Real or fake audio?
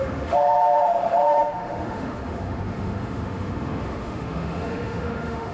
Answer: fake